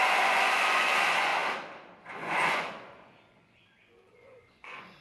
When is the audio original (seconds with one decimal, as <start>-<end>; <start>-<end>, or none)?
1.3-2.0